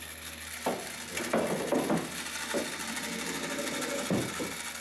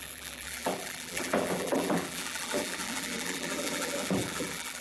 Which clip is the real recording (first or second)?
first